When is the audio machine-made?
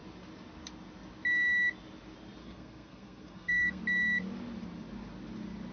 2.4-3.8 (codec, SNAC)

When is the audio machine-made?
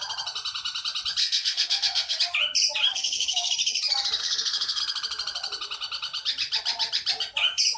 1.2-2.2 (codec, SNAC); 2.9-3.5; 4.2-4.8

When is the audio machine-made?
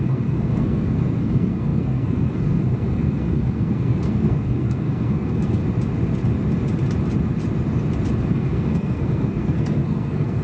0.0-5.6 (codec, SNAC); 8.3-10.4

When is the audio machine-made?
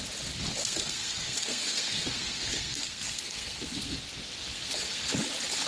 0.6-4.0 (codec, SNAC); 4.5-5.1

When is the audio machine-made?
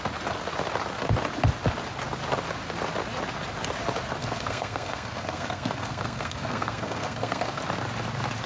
4.2-7.6 (codec, SNAC)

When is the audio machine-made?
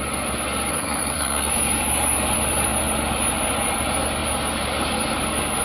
0.7-1.5 (codec, SNAC)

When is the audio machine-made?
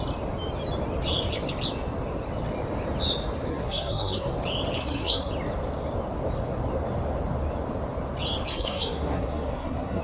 3.5-4.3 (codec, SNAC); 4.8-5.3; 8.5-10.0